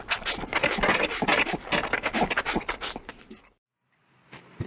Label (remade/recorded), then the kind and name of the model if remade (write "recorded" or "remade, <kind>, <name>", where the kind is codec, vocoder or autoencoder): recorded